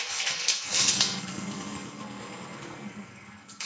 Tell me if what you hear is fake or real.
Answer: fake